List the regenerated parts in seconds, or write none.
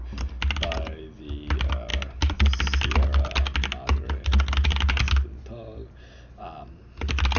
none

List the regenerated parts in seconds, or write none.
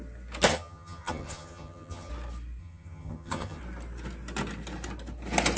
0.5-2.1 (vocoder, HiFi-GAN); 2.6-3.6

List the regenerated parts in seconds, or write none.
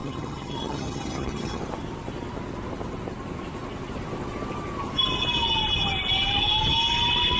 0.0-1.6 (vocoder, HiFi-GAN)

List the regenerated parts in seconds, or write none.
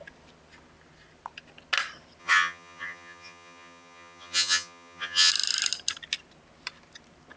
2.2-5.3 (vocoder, HiFi-GAN)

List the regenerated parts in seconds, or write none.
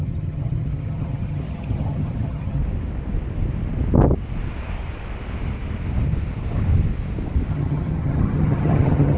0.0-2.6 (vocoder, HiFi-GAN); 7.5-9.2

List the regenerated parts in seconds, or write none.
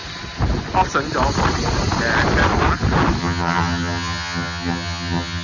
3.2-5.4 (vocoder, HiFi-GAN)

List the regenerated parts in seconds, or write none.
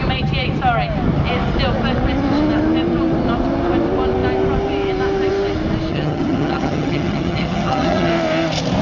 5.9-8.1 (vocoder, HiFi-GAN)